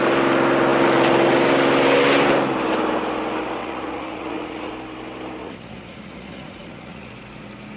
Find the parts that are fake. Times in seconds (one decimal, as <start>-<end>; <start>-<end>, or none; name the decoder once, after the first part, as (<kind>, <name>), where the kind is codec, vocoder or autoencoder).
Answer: 3.6-4.7 (vocoder, Vocos); 5.4-7.1